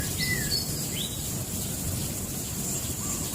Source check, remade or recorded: recorded